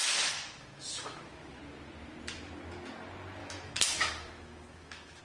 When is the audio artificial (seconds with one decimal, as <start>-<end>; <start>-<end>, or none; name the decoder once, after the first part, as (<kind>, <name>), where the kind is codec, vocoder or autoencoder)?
0.0-1.6 (autoencoder, DAC-VAE); 3.4-5.2